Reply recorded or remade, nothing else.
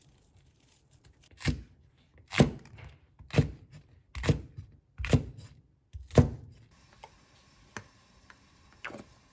recorded